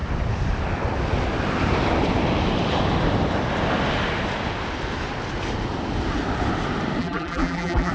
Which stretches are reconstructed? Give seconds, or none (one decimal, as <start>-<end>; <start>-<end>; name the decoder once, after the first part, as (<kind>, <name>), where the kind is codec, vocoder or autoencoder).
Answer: 7.0-7.9 (vocoder, BigVGAN v2)